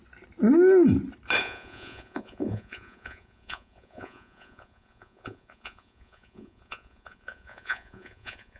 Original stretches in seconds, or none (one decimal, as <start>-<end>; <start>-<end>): 0.0-1.4